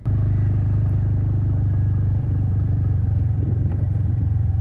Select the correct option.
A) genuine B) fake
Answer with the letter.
B